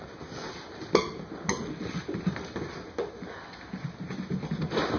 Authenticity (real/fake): real